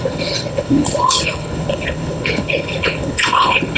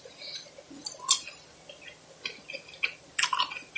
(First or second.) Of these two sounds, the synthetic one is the first